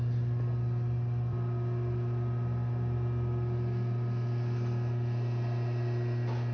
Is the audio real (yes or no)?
yes